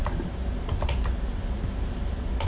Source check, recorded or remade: recorded